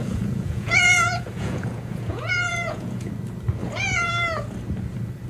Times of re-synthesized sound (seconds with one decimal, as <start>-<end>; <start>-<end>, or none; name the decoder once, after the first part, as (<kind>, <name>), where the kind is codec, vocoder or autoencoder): 0.0-3.1 (vocoder, Vocos); 3.6-4.1